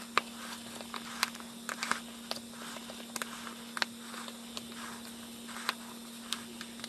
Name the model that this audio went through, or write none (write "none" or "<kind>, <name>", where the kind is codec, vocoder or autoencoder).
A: none